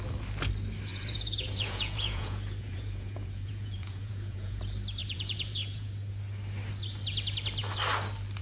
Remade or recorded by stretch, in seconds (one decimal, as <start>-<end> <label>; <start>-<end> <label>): 0.0-0.9 recorded; 0.9-4.6 remade; 4.6-5.0 recorded; 5.0-5.9 remade; 5.9-8.4 recorded

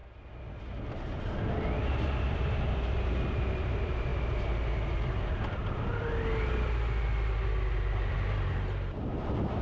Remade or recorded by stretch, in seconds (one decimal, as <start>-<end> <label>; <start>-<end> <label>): 0.0-1.9 recorded; 1.9-4.1 remade; 4.1-8.5 recorded; 8.5-9.6 remade

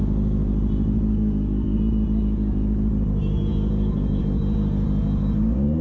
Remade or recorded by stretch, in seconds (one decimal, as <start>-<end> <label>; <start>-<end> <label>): 0.0-1.1 recorded; 1.1-1.8 remade; 1.8-5.8 recorded

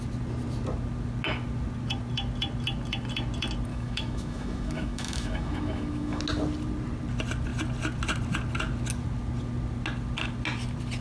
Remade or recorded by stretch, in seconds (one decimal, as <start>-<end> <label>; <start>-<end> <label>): 0.0-3.7 recorded; 3.7-6.2 remade; 6.2-11.0 recorded

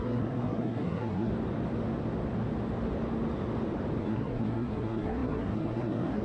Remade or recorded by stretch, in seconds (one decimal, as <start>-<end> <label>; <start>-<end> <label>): 0.0-1.3 remade; 1.3-4.0 recorded; 4.0-6.2 remade